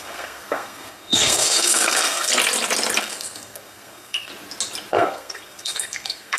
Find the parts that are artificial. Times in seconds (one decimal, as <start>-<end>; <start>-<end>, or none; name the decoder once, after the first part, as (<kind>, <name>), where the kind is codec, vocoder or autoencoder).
0.0-2.3 (codec, SNAC); 3.0-4.3; 4.9-6.4